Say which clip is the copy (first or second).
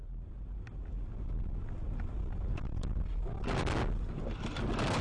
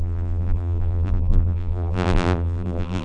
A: second